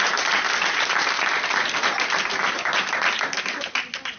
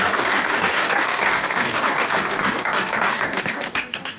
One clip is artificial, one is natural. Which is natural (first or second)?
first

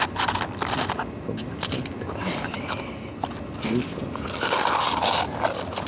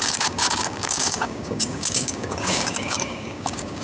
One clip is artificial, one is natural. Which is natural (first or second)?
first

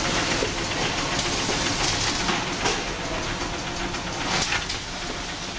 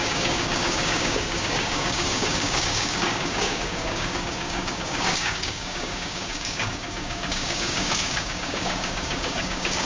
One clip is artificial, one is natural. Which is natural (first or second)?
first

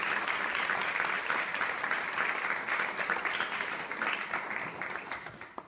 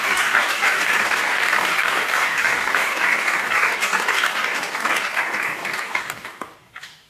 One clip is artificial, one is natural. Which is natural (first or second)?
first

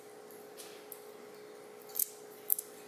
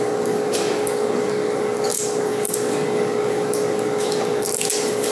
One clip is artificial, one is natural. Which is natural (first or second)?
first